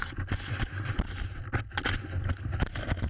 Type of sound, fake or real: real